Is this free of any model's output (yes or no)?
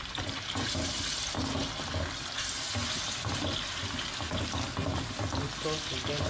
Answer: yes